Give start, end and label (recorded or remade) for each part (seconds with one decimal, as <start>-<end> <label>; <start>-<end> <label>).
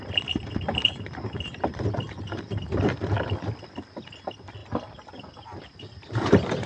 0.0-4.6 remade; 4.6-5.6 recorded; 5.6-6.7 remade